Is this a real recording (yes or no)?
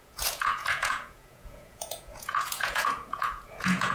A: no